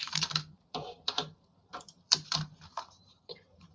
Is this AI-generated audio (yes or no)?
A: yes